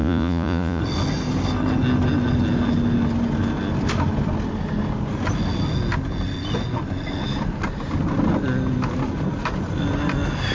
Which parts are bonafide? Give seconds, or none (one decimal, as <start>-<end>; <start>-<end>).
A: 0.8-10.5

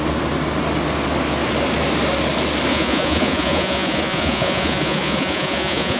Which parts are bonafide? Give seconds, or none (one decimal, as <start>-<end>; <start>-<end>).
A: 0.0-2.7

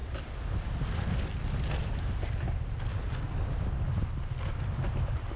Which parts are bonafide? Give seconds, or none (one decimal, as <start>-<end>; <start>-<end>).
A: 0.0-5.4

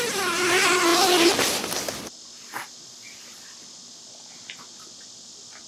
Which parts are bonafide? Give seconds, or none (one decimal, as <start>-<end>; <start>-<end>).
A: 0.0-5.7

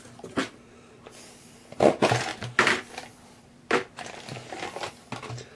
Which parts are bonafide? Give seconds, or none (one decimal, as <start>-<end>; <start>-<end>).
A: 0.0-0.4; 1.6-2.3

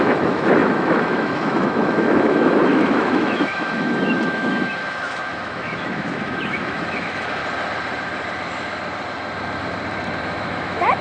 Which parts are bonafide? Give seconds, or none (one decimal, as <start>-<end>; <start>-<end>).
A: 7.4-10.2

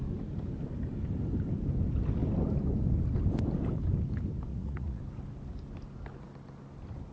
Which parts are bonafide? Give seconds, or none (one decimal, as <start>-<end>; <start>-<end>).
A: 0.0-4.5; 5.0-7.1

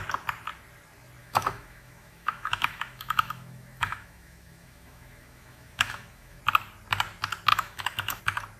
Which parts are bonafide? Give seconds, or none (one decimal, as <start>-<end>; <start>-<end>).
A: 0.0-1.2; 6.4-7.5; 8.2-8.6